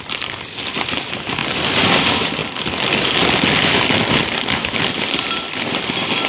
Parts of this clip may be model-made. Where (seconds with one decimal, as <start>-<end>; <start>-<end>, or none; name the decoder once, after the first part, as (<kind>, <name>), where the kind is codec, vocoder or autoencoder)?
none